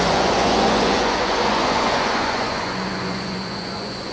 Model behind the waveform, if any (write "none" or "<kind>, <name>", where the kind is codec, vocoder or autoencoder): vocoder, Vocos